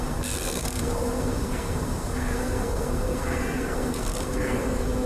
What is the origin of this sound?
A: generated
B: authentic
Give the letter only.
A